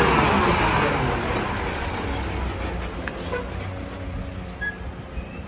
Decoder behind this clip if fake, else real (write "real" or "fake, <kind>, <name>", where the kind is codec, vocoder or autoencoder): real